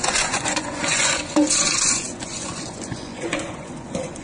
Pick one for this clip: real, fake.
fake